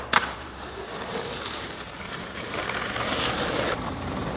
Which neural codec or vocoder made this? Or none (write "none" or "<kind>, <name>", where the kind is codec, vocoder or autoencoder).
vocoder, BigVGAN v2